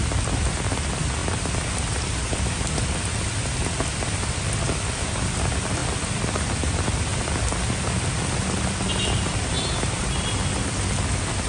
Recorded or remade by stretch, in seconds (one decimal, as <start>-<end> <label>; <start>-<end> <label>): 0.0-11.5 recorded

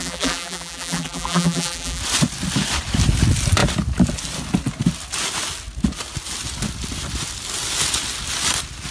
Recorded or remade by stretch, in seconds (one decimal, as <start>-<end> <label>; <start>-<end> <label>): 0.0-2.0 remade; 2.0-8.9 recorded

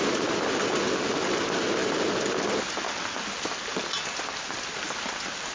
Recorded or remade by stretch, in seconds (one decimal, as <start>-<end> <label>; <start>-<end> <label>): 0.0-5.5 recorded

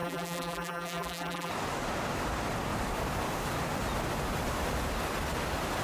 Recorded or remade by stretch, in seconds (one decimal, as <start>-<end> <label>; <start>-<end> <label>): 0.0-1.5 remade; 1.5-5.8 recorded